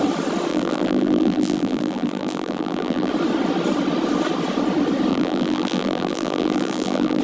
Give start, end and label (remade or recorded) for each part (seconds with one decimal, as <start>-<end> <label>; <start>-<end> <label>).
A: 0.0-0.5 recorded; 0.5-3.1 remade; 3.1-5.1 recorded; 5.1-7.2 remade